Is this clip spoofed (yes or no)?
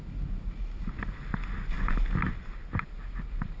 no